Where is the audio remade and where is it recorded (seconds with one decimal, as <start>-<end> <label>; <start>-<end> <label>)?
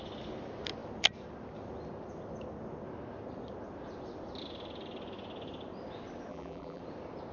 0.0-6.3 recorded; 6.3-6.8 remade; 6.8-7.3 recorded